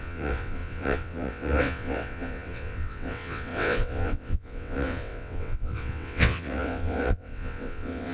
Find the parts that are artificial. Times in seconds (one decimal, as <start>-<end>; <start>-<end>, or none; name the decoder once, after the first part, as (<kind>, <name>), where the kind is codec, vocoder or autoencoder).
0.0-8.1 (vocoder, WaveNeXt)